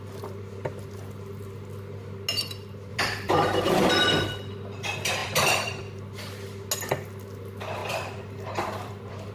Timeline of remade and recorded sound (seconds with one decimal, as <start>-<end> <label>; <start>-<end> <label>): 0.0-2.9 recorded; 2.9-3.7 remade; 3.7-5.2 recorded; 5.2-6.0 remade; 6.0-7.8 recorded; 7.8-9.3 remade